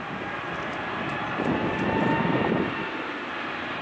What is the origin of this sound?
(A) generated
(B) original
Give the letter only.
B